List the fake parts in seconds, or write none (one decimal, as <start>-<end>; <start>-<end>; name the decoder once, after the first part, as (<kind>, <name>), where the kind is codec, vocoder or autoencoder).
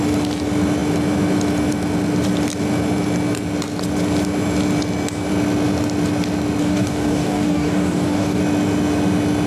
6.6-8.4 (codec, DAC)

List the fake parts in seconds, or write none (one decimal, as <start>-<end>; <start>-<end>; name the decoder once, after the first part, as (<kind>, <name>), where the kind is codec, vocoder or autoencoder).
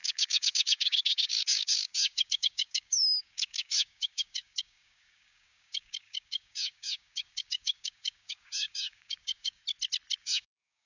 0.0-9.6 (codec, DAC); 10.2-10.9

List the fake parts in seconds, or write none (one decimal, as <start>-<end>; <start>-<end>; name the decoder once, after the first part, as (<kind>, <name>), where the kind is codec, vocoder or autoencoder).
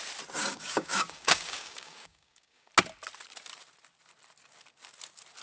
0.4-2.7 (codec, DAC)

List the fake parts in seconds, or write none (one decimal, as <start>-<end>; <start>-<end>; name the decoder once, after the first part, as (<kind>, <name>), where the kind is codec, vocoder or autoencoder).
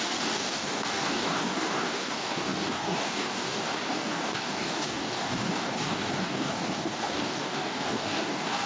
0.0-8.7 (codec, DAC)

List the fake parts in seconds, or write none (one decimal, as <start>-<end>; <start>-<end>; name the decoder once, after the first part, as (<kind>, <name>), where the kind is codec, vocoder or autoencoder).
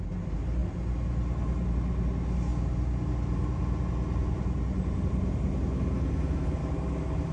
6.6-7.3 (codec, DAC)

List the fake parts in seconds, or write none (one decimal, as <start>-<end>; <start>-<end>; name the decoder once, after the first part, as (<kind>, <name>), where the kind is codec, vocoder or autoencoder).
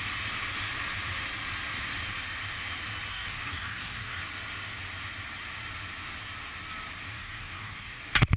3.1-4.2 (codec, DAC); 7.1-8.0